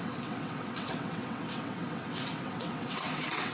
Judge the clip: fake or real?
fake